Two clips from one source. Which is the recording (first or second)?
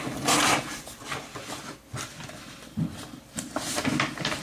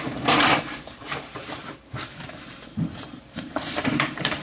first